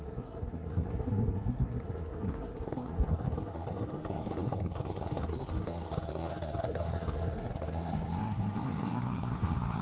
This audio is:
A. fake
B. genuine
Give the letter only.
A